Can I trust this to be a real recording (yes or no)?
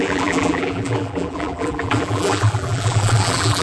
no